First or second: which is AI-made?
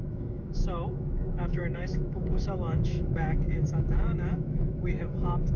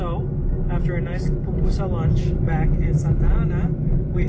first